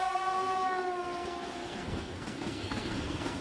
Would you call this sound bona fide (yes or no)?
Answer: no